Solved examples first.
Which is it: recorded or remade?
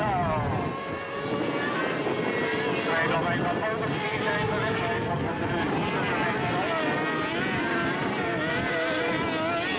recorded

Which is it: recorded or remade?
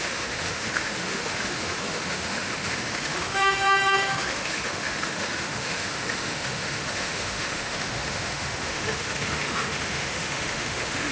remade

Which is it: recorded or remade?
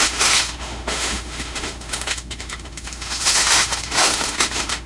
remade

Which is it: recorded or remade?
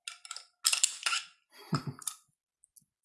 recorded